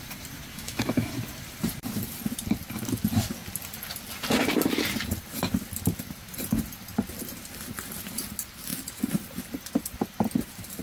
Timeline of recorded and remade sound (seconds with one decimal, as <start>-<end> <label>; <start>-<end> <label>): 0.0-0.5 recorded; 0.5-1.1 remade; 1.1-10.8 recorded

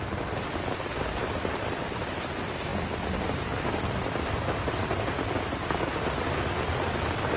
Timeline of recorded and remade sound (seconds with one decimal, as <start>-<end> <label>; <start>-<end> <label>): 0.0-7.4 recorded